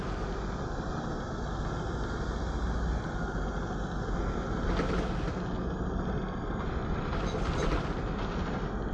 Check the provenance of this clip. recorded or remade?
recorded